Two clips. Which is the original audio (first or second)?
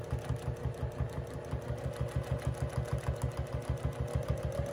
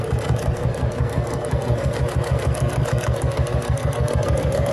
first